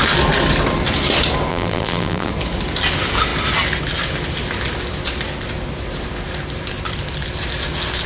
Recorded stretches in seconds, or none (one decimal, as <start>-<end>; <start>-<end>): 0.0-1.5; 2.3-8.1